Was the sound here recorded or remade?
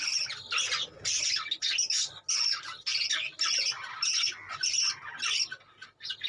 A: recorded